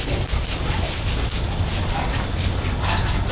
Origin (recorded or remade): recorded